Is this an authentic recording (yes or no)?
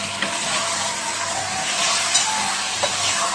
yes